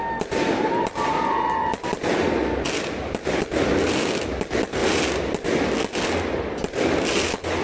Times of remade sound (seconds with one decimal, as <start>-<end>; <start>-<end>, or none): none